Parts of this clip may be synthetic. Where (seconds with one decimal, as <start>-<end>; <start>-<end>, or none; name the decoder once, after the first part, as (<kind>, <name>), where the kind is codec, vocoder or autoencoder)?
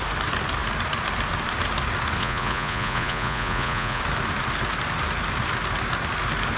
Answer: 2.2-4.0 (vocoder, Vocos)